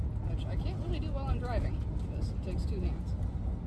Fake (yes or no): no